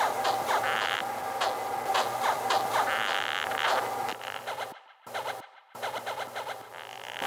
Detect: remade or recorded recorded